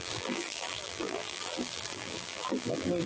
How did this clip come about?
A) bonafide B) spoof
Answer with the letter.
B